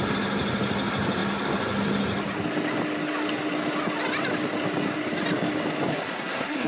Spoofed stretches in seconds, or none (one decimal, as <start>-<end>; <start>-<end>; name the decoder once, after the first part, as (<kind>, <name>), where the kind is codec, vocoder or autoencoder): 5.9-6.7 (codec, SNAC)